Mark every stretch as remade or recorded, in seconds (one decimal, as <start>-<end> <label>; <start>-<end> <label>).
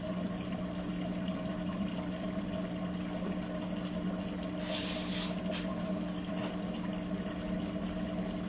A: 0.0-5.7 recorded; 5.7-6.3 remade; 6.3-8.5 recorded